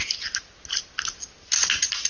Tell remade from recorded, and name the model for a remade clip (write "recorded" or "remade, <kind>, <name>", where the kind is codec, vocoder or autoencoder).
recorded